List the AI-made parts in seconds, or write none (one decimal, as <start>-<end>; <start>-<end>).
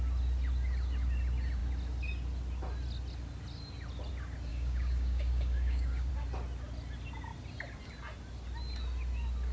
4.5-6.1